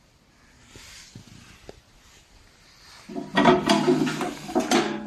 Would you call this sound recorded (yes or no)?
yes